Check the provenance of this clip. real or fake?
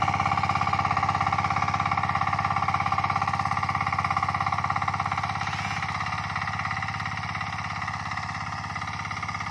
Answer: real